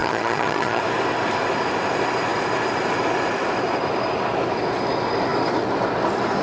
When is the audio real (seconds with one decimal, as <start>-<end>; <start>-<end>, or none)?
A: 0.8-6.4